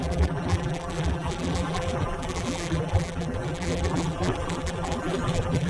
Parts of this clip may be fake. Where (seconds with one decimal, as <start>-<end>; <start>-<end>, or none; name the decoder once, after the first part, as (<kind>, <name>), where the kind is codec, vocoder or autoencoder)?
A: 0.0-5.7 (vocoder, BigVGAN v2)